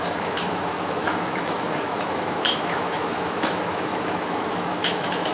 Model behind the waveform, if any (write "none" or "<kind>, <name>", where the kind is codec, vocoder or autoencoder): autoencoder, DAC-VAE